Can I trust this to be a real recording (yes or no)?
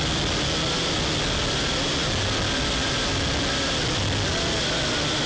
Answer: yes